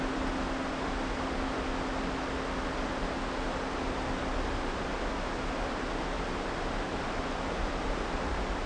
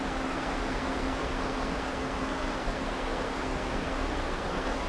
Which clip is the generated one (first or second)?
second